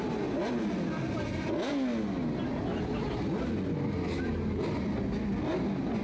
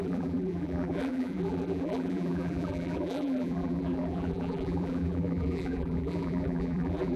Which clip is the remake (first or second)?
second